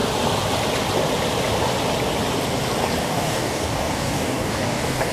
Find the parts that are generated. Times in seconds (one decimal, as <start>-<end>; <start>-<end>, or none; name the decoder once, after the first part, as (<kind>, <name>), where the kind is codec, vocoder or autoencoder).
3.0-5.1 (codec, DAC)